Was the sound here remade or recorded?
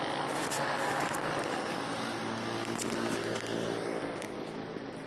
recorded